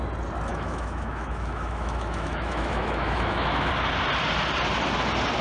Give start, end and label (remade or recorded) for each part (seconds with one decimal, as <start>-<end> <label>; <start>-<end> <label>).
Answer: 0.0-0.5 recorded; 0.5-3.7 remade; 3.7-5.4 recorded